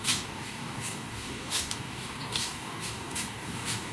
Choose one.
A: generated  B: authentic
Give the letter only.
A